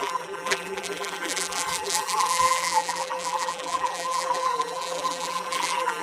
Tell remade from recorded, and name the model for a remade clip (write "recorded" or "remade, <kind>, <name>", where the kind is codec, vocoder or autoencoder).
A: remade, vocoder, BigVGAN v2